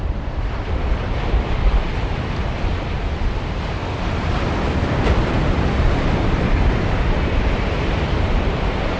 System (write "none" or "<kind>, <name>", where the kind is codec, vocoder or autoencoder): vocoder, BigVGAN v2